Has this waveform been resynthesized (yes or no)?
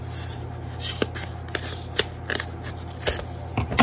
no